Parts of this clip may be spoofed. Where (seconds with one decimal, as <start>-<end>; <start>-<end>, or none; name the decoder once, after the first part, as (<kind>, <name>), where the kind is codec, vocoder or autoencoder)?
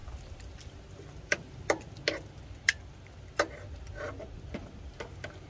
none